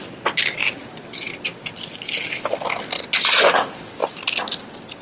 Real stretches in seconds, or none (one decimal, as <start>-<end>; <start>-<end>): 0.0-5.0